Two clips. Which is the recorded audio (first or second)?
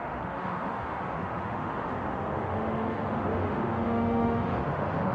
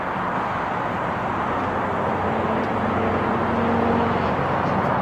second